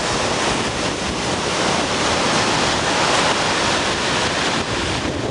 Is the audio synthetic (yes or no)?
no